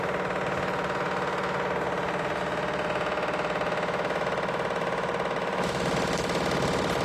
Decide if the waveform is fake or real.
real